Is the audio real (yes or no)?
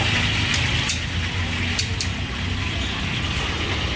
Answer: yes